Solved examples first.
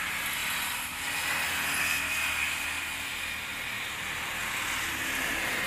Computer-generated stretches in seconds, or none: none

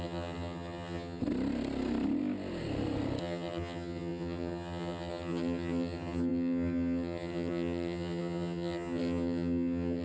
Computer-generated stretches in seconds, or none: 0.0-1.2 (vocoder, HiFi-GAN); 3.2-10.0